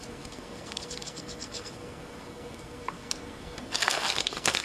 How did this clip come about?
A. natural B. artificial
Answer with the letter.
B